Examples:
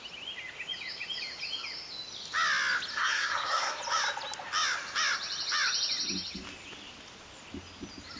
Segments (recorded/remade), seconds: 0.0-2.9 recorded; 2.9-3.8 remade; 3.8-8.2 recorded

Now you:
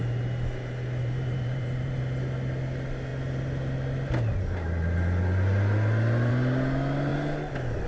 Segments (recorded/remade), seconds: 0.0-1.0 recorded; 1.0-2.0 remade; 2.0-7.9 recorded

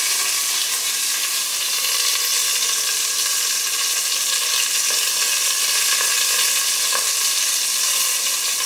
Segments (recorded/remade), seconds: 0.0-8.7 recorded

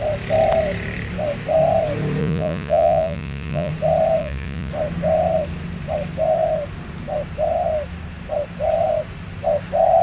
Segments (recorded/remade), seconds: 0.0-2.2 recorded; 2.2-3.7 remade; 3.7-4.2 recorded; 4.2-4.7 remade; 4.7-10.0 recorded

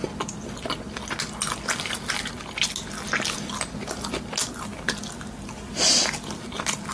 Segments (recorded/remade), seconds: 0.0-6.9 recorded